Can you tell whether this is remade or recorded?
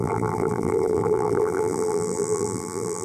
remade